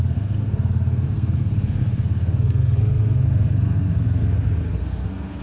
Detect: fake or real fake